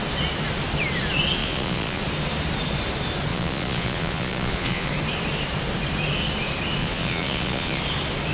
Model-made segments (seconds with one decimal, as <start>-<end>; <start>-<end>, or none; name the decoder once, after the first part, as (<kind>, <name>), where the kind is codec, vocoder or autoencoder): 1.4-2.0 (vocoder, Vocos); 3.3-4.9; 6.8-7.8